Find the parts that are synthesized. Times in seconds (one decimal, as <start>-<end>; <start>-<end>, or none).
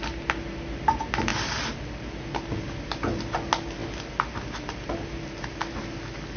none